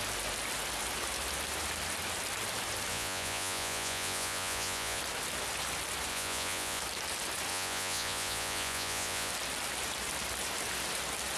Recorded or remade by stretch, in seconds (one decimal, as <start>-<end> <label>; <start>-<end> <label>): 0.0-2.9 recorded; 2.9-5.0 remade; 5.0-6.1 recorded; 6.1-6.8 remade; 6.8-7.5 recorded; 7.5-9.3 remade; 9.3-11.4 recorded